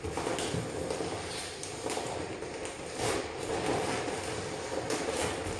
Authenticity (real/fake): real